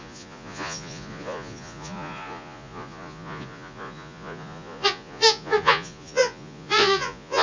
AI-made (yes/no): yes